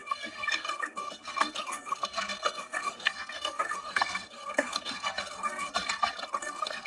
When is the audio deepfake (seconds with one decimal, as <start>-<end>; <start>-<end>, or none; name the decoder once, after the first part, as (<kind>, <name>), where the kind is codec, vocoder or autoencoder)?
0.0-5.7 (codec, SNAC); 6.4-6.9